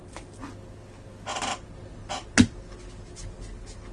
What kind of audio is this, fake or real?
real